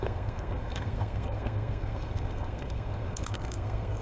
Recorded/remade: remade